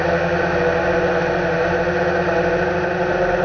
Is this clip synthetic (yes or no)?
no